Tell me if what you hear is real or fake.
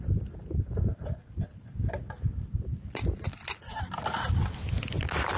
real